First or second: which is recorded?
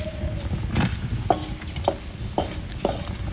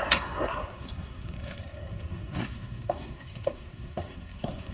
first